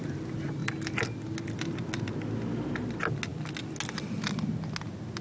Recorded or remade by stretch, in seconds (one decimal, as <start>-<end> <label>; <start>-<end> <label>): 0.0-5.2 recorded